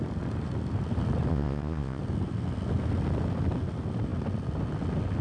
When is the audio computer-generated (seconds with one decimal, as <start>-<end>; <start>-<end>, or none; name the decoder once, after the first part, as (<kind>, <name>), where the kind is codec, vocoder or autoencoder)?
1.3-2.0 (vocoder, Vocos)